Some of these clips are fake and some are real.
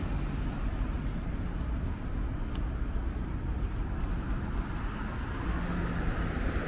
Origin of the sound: real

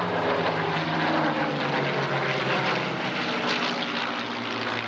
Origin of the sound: real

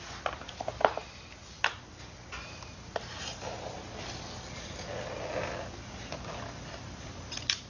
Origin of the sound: real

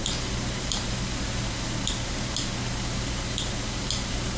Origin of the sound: fake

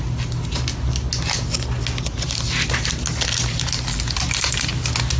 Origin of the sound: real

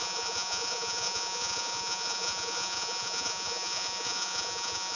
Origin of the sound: fake